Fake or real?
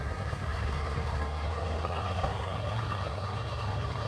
fake